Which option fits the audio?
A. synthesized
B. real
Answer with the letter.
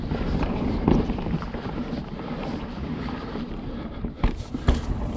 A